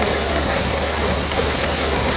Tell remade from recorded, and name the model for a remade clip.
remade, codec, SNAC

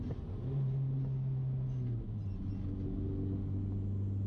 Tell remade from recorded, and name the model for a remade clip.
recorded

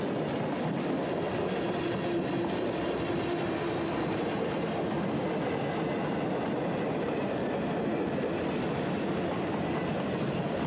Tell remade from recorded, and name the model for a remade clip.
recorded